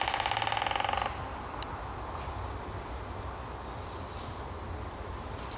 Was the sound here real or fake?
real